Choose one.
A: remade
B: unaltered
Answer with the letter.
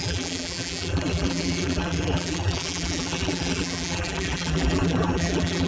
A